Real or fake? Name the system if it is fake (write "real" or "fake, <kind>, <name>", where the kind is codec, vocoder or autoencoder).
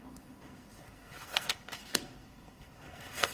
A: fake, codec, SNAC